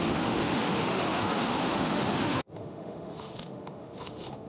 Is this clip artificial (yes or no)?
yes